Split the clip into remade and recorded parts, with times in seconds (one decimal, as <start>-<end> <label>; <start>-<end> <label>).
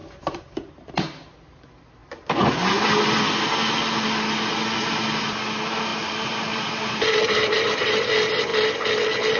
0.0-0.9 remade; 0.9-5.9 recorded; 5.9-8.0 remade; 8.0-9.4 recorded